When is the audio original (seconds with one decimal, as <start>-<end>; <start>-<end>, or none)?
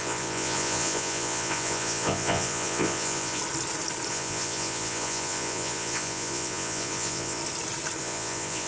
3.4-4.1; 7.4-8.0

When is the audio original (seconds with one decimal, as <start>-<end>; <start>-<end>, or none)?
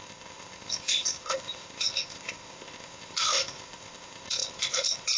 none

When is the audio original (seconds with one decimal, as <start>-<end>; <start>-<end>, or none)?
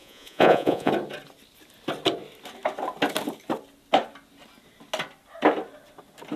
0.9-6.4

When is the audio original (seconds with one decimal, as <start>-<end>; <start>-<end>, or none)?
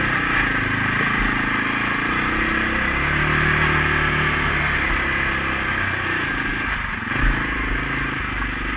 0.0-8.8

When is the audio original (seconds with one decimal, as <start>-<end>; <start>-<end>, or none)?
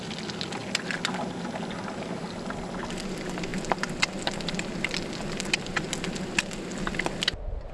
0.0-7.7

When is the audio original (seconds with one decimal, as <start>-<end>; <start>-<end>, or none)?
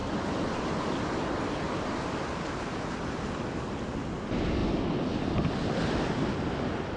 0.0-7.0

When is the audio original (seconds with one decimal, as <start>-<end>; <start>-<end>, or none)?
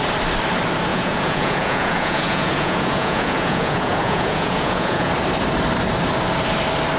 0.0-0.9; 5.1-7.0